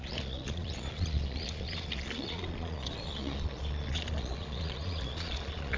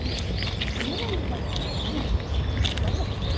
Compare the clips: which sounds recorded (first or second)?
second